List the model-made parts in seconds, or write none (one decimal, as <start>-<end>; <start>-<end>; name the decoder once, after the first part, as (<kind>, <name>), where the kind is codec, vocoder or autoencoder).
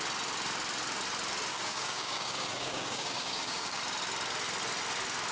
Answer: 1.5-3.8 (codec, DAC)